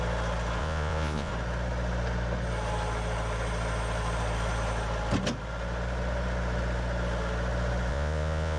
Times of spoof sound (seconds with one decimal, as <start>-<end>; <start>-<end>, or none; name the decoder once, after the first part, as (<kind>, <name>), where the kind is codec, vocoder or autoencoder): 0.6-1.3 (vocoder, Vocos); 7.9-8.6